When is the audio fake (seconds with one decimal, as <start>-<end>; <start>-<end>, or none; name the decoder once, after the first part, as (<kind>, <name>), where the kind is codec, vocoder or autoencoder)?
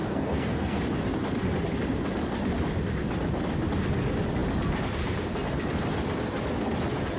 0.0-0.8 (codec, SNAC)